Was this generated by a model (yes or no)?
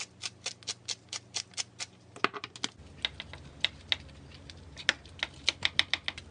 no